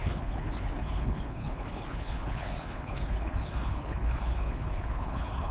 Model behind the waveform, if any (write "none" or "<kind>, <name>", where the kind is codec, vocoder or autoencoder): codec, HILCodec